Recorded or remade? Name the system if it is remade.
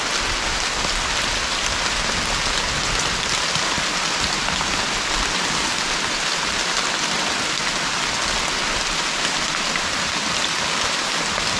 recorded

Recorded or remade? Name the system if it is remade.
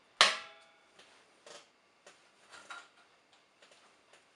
recorded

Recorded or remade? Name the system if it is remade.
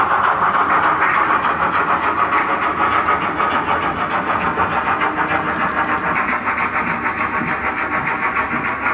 recorded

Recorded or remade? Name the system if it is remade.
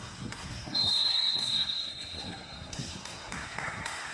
remade, codec, SNAC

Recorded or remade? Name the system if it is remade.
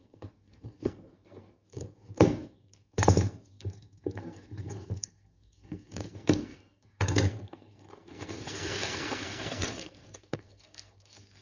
remade, codec, SNAC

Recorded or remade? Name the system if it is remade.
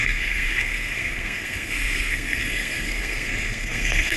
remade, codec, SNAC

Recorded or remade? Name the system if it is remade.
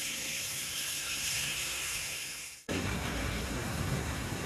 remade, codec, SNAC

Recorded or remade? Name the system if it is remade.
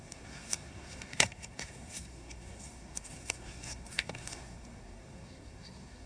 remade, codec, SNAC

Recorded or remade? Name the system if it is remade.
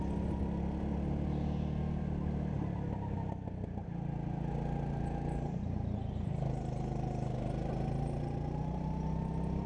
recorded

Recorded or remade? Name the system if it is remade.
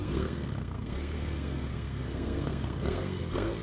remade, codec, SNAC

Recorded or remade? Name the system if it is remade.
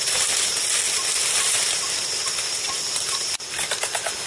recorded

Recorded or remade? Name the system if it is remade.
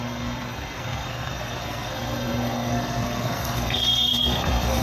remade, codec, SNAC